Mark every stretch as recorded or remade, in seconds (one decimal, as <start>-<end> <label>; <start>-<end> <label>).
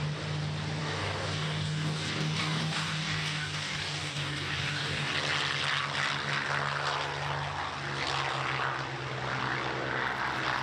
0.0-0.8 recorded; 0.8-5.1 remade; 5.1-10.6 recorded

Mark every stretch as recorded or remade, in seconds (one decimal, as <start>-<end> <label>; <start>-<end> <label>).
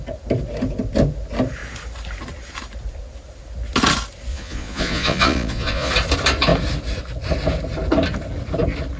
0.0-4.3 recorded; 4.3-5.9 remade; 5.9-9.0 recorded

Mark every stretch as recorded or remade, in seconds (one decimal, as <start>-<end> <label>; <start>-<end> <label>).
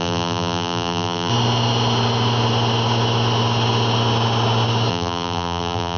0.0-1.3 remade; 1.3-4.9 recorded; 4.9-6.0 remade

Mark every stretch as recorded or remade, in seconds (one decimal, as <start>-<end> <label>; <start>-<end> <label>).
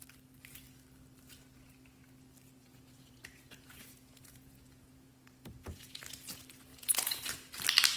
0.0-2.6 recorded; 2.6-6.0 remade; 6.0-6.7 recorded; 6.7-7.2 remade; 7.2-8.0 recorded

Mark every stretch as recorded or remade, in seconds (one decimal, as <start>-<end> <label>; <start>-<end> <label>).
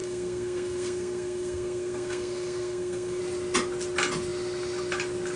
0.0-3.2 remade; 3.2-5.4 recorded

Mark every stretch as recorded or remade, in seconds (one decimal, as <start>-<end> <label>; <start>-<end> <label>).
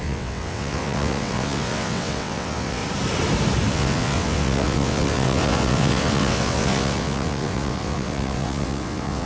0.0-2.8 remade; 2.8-3.7 recorded; 3.7-9.3 remade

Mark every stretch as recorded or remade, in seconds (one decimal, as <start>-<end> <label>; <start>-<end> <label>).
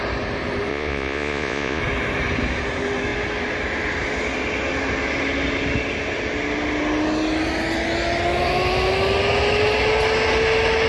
0.0-0.7 recorded; 0.7-1.8 remade; 1.8-10.9 recorded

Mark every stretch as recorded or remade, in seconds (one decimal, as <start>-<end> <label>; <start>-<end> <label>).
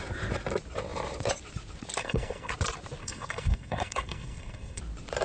0.0-2.0 recorded; 2.0-2.5 remade; 2.5-3.0 recorded; 3.0-4.8 remade; 4.8-5.2 recorded